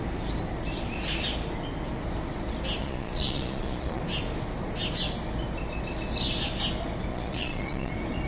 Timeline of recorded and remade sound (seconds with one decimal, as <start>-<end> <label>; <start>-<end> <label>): 0.0-2.8 recorded; 2.8-4.0 remade; 4.0-7.1 recorded; 7.1-7.9 remade; 7.9-8.3 recorded